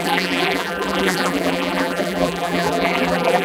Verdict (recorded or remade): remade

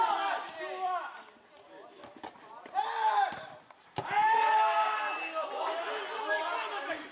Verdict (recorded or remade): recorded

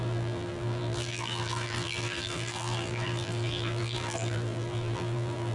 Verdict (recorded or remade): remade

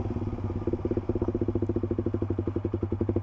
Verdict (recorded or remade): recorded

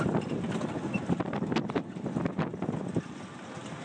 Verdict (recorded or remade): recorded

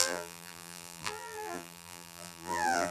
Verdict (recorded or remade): remade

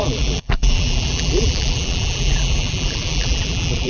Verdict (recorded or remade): remade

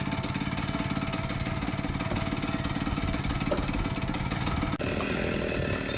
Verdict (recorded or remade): recorded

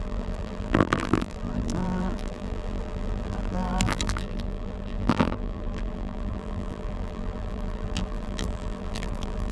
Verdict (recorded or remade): remade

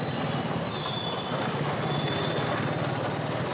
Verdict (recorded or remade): recorded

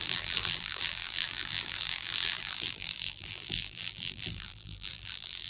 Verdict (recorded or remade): remade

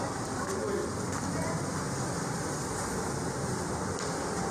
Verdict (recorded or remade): remade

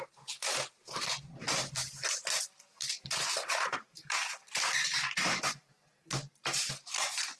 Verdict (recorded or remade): remade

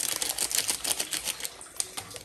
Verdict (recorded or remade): recorded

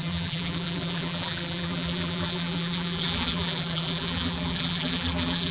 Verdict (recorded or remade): remade